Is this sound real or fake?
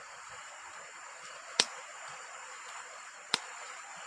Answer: fake